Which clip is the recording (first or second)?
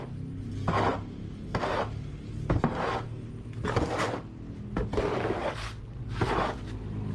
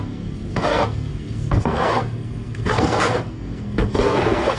first